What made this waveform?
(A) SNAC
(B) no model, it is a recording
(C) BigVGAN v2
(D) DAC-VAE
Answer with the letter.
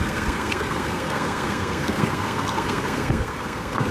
A